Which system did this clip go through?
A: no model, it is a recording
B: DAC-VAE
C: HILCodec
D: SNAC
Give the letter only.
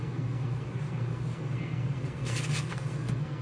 D